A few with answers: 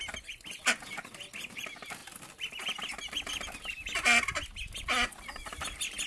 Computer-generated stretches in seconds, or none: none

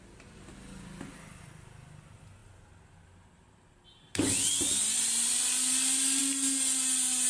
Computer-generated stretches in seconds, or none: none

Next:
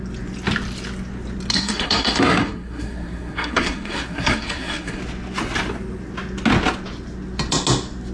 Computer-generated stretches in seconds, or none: 1.5-5.0